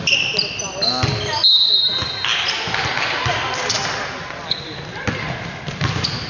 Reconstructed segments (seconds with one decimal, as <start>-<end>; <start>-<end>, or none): none

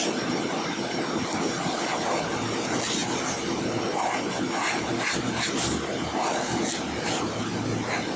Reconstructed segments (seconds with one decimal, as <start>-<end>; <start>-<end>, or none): none